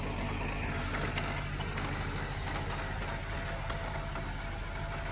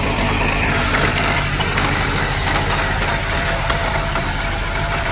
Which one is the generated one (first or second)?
second